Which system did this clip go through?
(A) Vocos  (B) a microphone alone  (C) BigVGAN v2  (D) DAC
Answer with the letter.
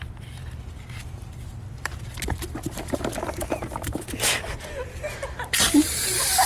C